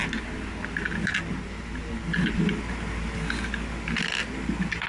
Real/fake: real